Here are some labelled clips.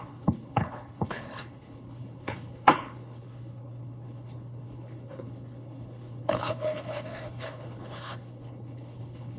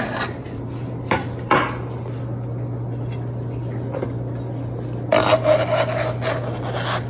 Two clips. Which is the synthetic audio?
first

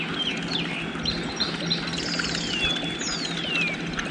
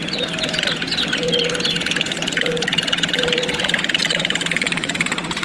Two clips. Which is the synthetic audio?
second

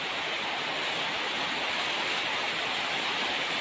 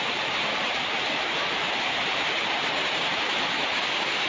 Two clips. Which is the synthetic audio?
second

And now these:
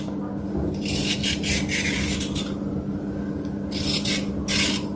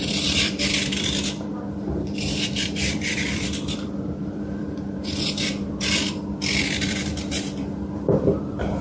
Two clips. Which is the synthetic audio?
second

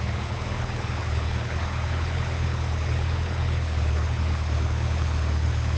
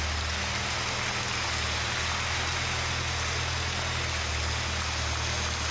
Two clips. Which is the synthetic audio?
first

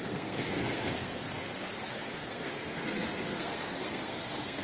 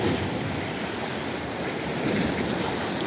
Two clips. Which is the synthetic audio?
first